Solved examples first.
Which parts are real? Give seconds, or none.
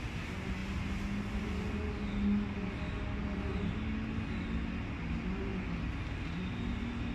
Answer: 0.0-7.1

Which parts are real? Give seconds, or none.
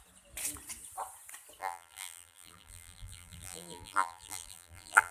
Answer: 0.0-1.6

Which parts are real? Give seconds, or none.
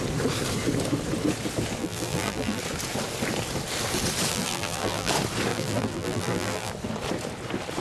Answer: 0.0-1.8; 2.6-4.3; 5.1-5.5; 6.7-7.8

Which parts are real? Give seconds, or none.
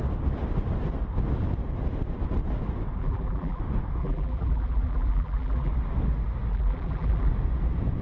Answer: 0.0-3.0; 3.6-4.0; 5.7-6.5; 7.3-8.0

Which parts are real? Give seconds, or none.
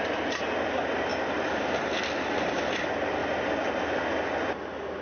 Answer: 0.0-1.1; 2.8-5.0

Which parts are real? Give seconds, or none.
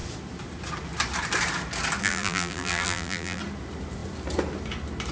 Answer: 0.0-2.0; 3.4-5.1